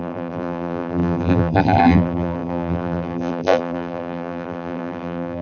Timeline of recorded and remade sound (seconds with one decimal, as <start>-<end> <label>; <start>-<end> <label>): 0.0-5.4 remade